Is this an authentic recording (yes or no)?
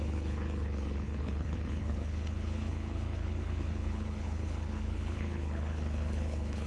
no